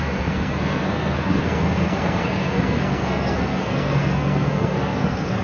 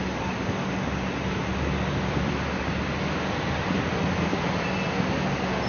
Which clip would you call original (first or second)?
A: second